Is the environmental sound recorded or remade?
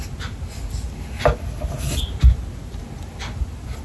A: recorded